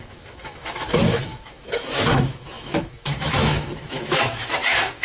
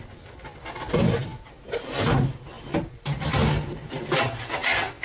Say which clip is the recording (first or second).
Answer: second